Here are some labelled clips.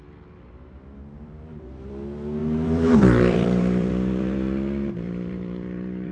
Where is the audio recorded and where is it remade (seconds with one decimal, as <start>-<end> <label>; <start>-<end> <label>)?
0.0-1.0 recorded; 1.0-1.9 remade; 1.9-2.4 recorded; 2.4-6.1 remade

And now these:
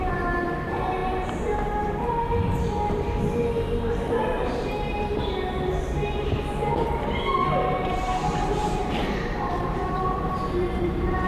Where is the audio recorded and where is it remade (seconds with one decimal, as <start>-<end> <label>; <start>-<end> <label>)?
0.0-11.3 remade

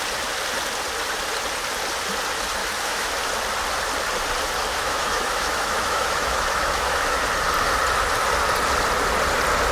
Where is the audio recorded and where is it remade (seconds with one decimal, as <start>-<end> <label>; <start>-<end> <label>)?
0.0-2.6 recorded; 2.6-3.1 remade; 3.1-4.7 recorded; 4.7-7.2 remade; 7.2-9.7 recorded

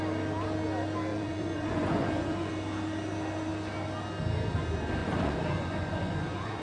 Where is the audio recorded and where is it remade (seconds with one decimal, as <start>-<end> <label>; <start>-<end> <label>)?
0.0-1.1 recorded; 1.1-2.5 remade; 2.5-5.0 recorded; 5.0-6.6 remade

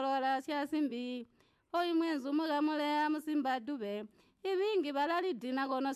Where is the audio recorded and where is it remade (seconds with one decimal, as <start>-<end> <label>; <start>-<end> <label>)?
0.0-6.0 remade

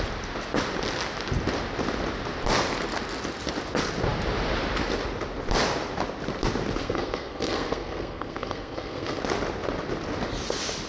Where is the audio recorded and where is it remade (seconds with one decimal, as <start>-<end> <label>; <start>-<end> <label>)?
0.0-6.8 recorded; 6.8-9.2 remade; 9.2-10.9 recorded